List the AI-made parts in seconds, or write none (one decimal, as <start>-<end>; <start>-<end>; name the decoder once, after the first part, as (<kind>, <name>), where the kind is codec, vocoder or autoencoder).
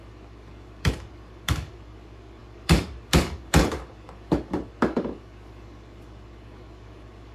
0.0-7.3 (codec, DAC)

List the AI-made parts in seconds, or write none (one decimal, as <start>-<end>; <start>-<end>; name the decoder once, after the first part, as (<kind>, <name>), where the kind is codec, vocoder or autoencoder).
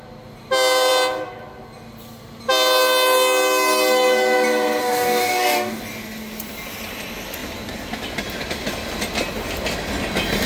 4.8-5.8 (codec, DAC)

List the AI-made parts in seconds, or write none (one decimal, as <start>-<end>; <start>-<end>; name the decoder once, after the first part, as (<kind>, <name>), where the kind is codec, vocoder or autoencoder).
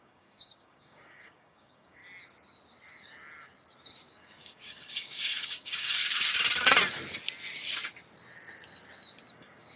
0.0-2.0 (codec, DAC); 4.1-6.0; 9.3-9.8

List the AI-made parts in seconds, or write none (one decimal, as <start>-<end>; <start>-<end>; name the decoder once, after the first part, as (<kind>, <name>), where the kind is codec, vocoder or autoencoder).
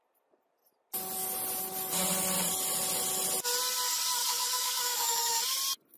4.2-5.4 (codec, DAC)